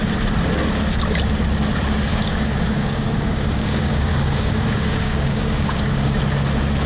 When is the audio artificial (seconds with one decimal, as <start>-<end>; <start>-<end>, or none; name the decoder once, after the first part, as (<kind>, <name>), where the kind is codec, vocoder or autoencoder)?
2.1-6.2 (codec, DAC)